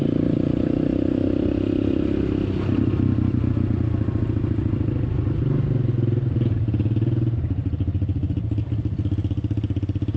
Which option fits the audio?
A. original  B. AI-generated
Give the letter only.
A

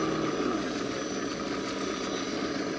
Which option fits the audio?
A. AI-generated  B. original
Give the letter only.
B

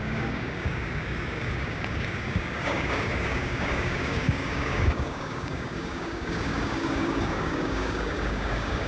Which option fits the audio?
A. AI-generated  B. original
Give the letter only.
A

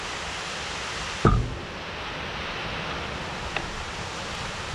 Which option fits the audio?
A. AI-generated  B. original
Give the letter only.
B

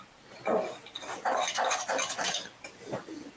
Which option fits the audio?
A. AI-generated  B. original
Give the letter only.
A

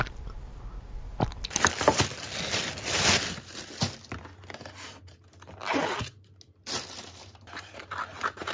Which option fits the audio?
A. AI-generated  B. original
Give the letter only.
B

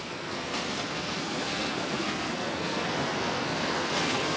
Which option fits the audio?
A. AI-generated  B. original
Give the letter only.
A